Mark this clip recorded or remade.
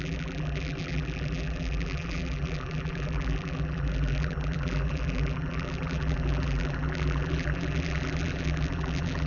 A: remade